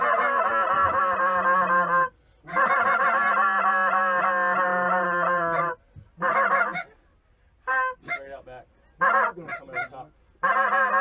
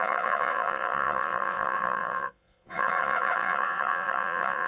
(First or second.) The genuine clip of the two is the first